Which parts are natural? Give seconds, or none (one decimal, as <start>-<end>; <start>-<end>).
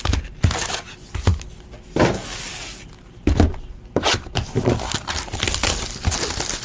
0.0-6.6